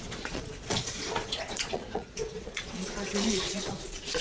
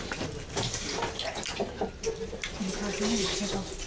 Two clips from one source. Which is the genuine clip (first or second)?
second